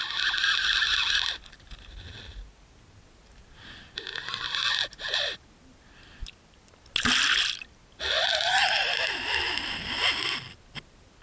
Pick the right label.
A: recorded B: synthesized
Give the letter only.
A